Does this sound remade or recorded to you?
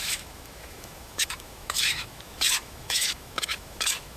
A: remade